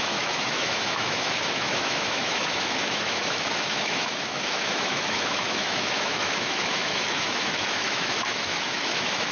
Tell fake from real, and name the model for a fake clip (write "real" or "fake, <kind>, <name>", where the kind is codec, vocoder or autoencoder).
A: fake, autoencoder, DAC-VAE